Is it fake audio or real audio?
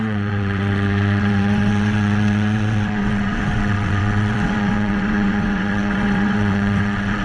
fake